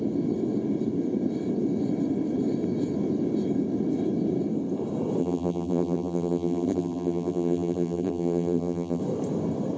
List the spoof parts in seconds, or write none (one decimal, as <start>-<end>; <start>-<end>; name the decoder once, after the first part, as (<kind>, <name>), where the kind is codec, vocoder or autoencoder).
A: 5.2-9.0 (vocoder, BigVGAN v2)